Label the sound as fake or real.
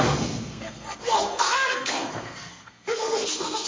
fake